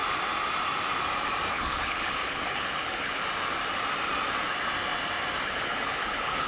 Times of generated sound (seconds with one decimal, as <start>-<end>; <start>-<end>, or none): 1.5-3.2; 5.4-6.5

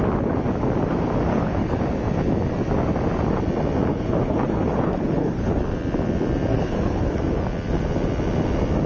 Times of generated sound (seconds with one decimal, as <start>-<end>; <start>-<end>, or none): 1.3-1.8; 3.9-5.6; 6.5-7.2